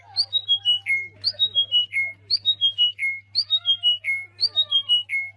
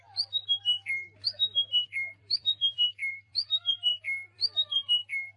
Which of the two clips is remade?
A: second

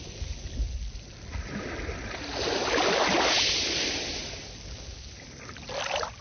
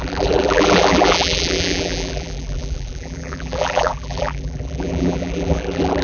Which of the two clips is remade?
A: second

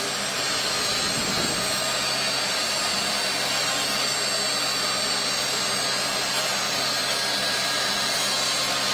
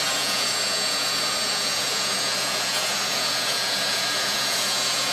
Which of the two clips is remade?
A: second